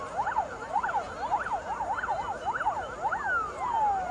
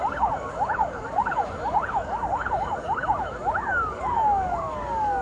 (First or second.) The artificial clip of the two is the second